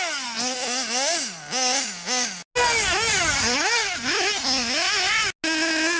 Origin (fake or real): real